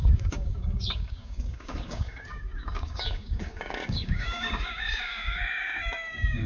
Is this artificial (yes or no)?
yes